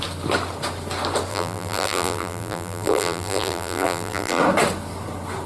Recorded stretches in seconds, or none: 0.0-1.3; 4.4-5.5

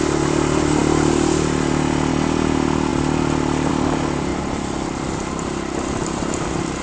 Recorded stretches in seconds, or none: 0.0-2.9; 3.7-4.3; 6.2-6.8

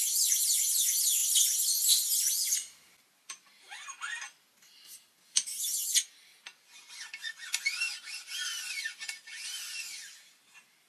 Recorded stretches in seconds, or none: 0.0-10.9

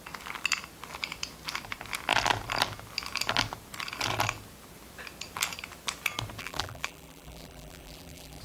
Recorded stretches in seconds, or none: 0.0-6.4

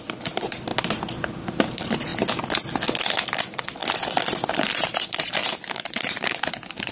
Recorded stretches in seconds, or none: 0.7-1.6; 2.1-3.3; 3.8-4.5

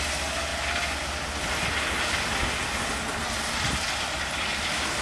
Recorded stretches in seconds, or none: 0.0-5.0

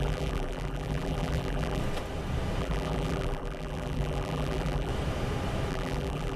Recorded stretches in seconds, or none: 1.8-2.6; 4.9-5.7